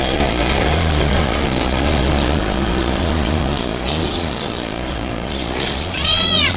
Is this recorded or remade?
remade